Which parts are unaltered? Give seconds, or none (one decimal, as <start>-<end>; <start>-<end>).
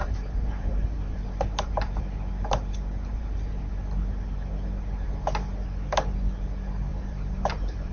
2.0-3.1; 3.8-6.9